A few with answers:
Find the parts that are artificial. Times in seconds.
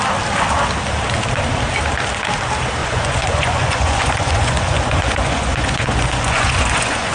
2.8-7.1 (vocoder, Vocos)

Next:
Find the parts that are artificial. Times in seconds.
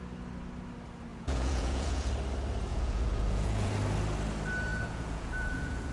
1.1-2.1 (vocoder, Vocos); 2.7-3.7; 4.7-5.9